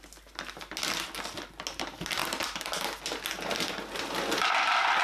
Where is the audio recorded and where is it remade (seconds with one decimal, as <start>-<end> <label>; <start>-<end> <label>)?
0.0-5.0 recorded